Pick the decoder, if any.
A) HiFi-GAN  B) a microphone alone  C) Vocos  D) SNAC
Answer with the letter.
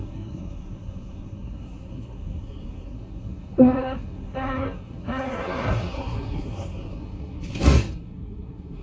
D